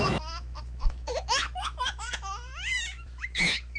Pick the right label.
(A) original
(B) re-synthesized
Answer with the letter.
B